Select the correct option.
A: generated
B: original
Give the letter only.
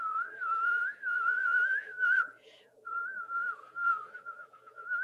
A